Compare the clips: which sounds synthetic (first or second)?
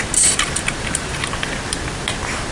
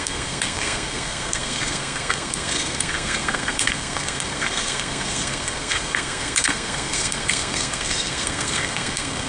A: second